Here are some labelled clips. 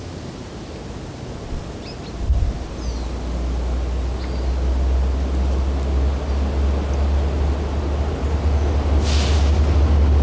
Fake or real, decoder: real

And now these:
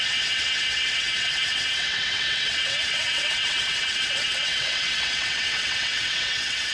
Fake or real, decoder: fake, vocoder, WaveNeXt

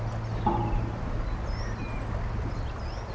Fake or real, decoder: real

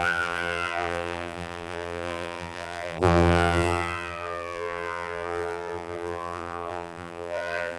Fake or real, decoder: fake, vocoder, BigVGAN v2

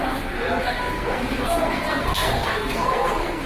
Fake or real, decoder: fake, codec, SNAC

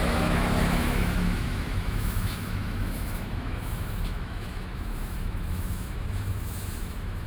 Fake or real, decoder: fake, autoencoder, DAC-VAE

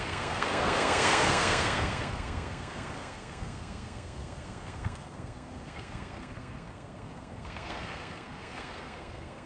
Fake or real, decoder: fake, codec, SNAC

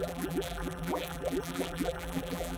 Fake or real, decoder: fake, vocoder, BigVGAN v2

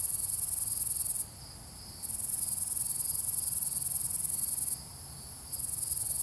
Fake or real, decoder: real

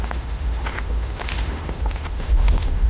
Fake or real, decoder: fake, autoencoder, DAC-VAE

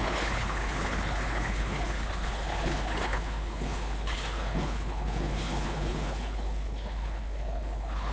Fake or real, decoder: fake, codec, HILCodec